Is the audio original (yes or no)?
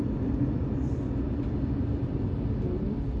yes